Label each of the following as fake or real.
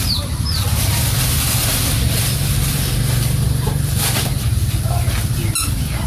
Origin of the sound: real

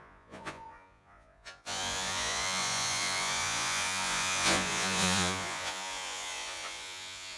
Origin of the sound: fake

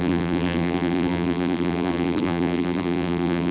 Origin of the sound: fake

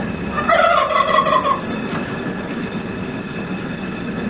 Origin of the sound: real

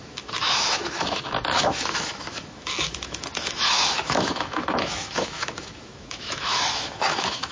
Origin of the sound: fake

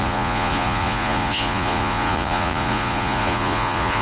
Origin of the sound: fake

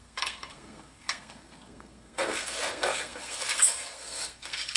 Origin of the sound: fake